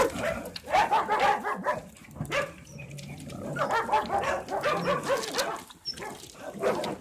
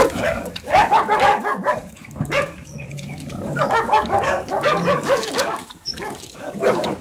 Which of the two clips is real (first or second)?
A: first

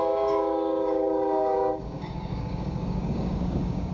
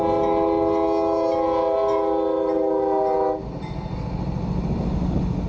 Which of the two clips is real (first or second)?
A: second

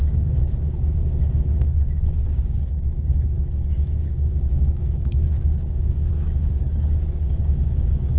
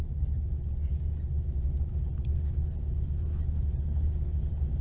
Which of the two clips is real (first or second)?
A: second